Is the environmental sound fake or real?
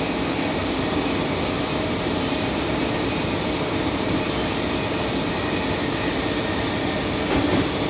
real